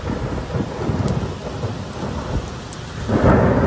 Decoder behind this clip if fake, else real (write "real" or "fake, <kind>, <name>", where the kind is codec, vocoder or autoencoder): real